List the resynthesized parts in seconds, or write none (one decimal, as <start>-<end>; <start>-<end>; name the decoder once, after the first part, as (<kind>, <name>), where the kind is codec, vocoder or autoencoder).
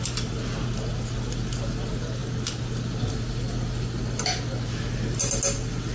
none